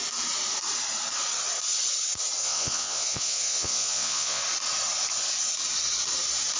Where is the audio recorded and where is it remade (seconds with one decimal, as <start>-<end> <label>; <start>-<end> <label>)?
0.0-2.4 recorded; 2.4-4.4 remade; 4.4-6.6 recorded